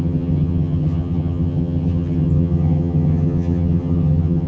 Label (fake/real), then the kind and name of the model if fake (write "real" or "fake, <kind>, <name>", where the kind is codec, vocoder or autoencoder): fake, vocoder, HiFi-GAN